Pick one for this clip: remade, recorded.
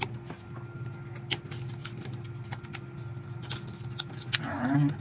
recorded